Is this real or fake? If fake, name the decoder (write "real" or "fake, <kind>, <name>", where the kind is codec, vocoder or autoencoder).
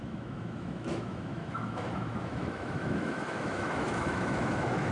fake, autoencoder, DAC-VAE